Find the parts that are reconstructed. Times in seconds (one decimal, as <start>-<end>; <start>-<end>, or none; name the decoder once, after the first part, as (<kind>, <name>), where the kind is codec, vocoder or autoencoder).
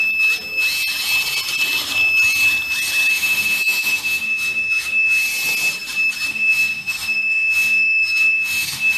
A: 3.1-5.2 (autoencoder, DAC-VAE); 6.3-9.0